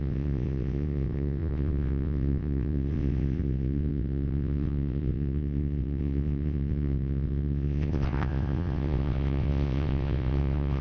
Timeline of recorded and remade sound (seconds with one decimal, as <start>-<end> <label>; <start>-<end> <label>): 0.0-10.8 remade